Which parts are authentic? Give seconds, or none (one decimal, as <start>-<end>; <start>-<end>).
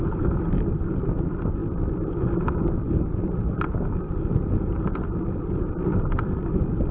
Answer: none